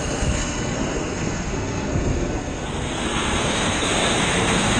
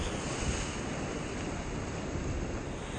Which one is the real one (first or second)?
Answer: second